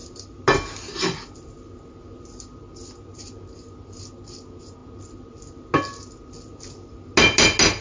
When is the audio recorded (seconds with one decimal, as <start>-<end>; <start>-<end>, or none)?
0.0-7.8